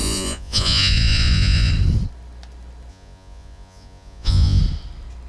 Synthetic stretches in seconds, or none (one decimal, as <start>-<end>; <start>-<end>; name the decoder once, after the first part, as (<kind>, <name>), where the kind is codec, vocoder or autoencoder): 0.0-1.7 (vocoder, Vocos); 2.9-4.6